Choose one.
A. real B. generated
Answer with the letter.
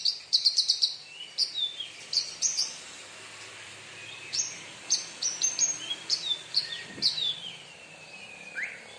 B